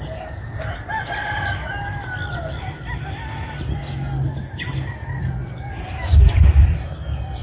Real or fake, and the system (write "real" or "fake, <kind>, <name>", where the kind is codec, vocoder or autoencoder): real